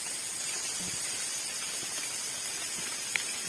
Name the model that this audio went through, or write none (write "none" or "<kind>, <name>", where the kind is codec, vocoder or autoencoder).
none